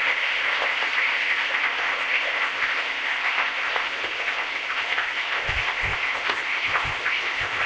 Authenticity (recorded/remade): remade